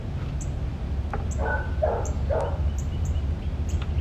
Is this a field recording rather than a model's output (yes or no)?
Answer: yes